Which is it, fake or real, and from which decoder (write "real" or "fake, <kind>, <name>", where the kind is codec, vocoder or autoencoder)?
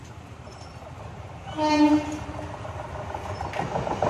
real